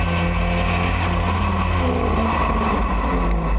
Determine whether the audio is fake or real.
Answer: real